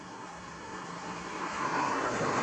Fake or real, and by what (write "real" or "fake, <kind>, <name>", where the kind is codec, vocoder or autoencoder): fake, codec, SNAC